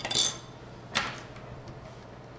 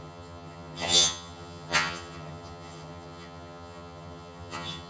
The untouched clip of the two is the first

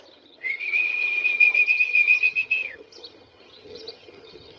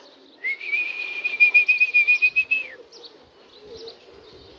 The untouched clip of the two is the second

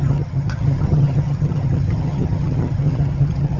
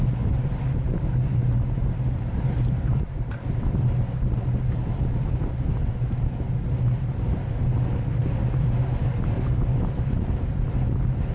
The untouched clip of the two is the second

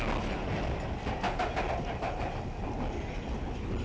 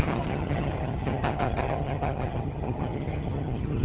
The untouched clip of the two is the first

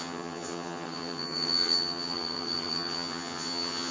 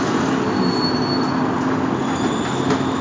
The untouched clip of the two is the second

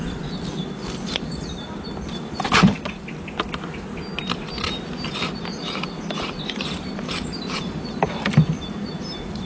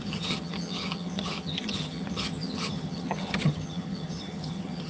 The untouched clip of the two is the first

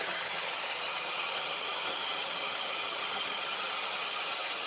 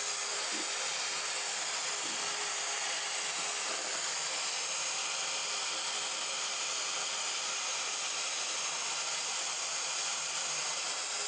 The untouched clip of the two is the second